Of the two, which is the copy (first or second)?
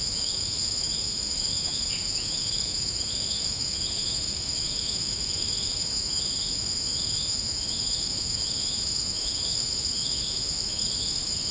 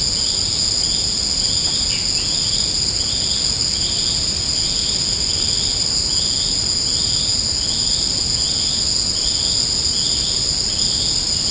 first